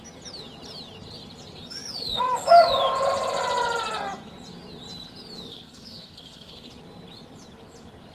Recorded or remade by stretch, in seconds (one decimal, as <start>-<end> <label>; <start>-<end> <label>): 0.0-5.5 recorded; 5.5-6.7 remade; 6.7-8.1 recorded